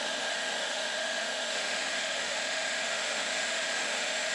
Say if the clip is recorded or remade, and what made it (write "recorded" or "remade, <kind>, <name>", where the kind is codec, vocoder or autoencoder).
remade, autoencoder, DAC-VAE